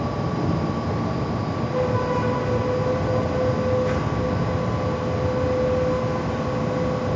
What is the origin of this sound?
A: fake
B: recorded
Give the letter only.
B